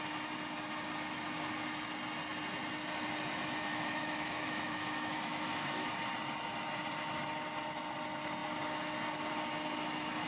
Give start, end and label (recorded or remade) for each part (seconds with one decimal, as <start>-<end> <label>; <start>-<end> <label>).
0.0-3.7 recorded; 3.7-5.9 remade; 5.9-10.3 recorded